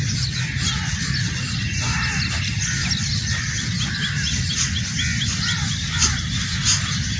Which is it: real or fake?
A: real